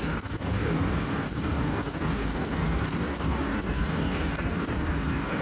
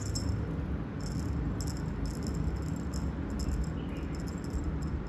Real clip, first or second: second